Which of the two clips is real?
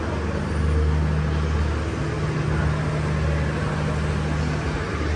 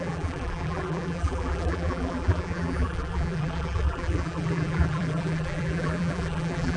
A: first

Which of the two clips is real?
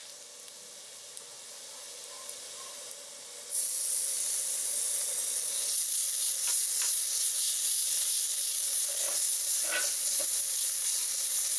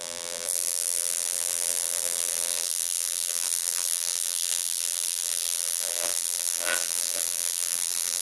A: first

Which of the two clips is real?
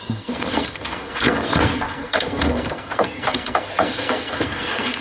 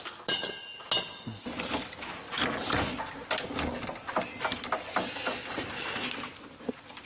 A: second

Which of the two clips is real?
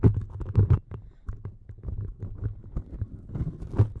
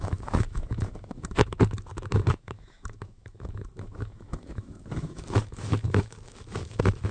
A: first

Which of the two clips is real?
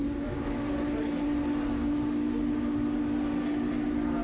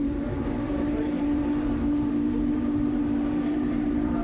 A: first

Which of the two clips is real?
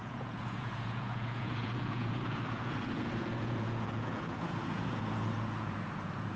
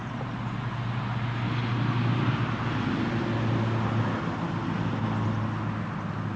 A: second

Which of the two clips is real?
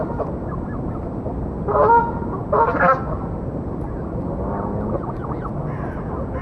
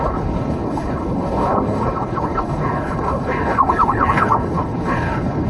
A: first